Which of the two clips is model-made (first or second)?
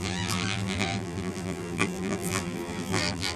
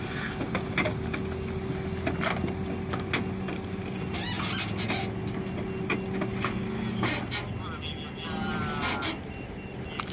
first